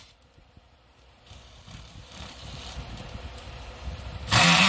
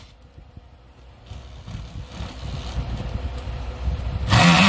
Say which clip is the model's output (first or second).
first